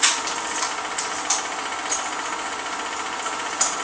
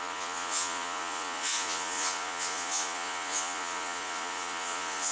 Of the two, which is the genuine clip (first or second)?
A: first